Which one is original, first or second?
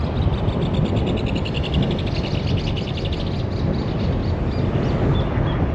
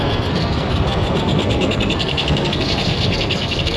first